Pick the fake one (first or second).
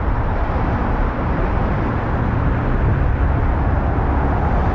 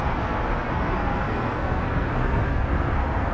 second